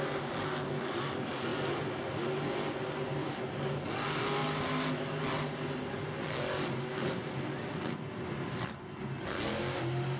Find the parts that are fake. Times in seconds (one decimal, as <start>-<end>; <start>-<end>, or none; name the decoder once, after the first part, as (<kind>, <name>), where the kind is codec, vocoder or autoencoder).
none